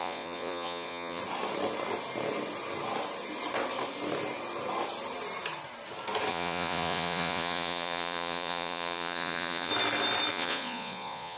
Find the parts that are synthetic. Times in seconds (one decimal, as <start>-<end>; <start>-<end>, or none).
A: 0.0-1.2; 6.3-9.7; 10.3-11.4